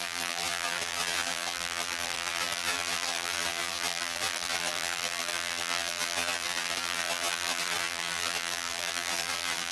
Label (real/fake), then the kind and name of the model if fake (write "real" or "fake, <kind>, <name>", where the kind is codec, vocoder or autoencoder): fake, vocoder, BigVGAN v2